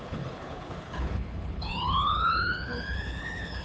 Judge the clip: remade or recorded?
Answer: remade